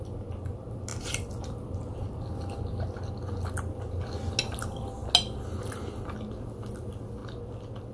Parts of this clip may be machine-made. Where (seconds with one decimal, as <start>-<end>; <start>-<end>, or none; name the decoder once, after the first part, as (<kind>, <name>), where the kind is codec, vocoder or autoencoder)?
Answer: none